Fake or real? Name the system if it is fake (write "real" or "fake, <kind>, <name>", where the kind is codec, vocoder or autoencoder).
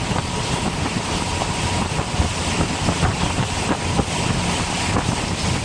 real